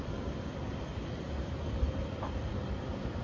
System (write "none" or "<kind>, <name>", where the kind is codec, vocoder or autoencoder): vocoder, BigVGAN v2